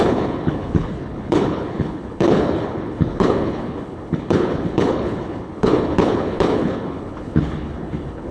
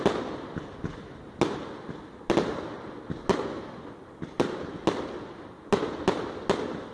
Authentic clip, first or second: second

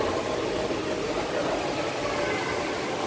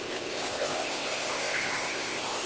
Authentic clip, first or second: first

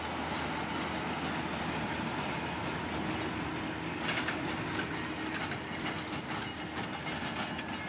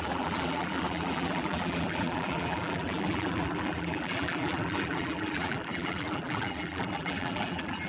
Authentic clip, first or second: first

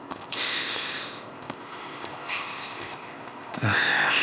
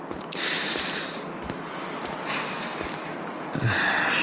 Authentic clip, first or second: second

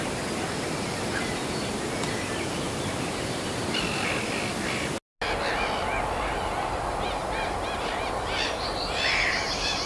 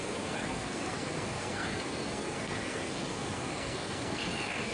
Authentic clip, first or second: first